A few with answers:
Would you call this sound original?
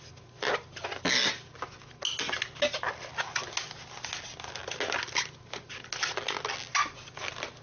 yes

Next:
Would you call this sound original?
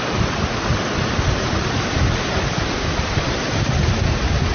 no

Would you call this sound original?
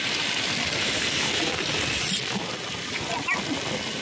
yes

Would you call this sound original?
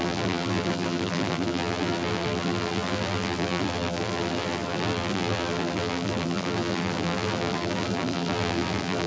no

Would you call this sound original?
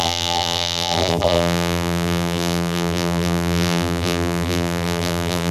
no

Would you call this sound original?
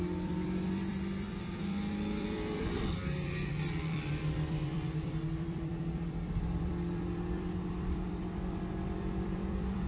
no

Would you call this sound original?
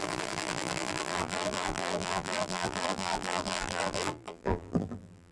no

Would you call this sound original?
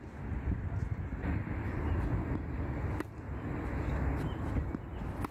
yes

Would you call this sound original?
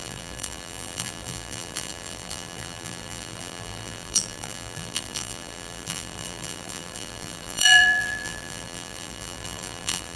no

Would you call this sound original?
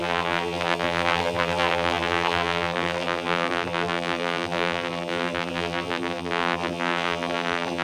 no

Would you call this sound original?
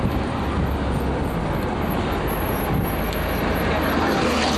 yes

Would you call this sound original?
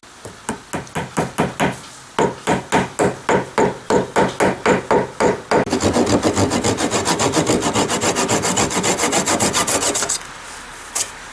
yes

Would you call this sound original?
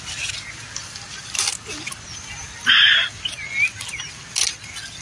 yes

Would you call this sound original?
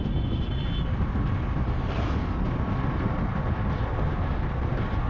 yes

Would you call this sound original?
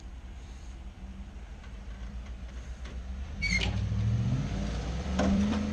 no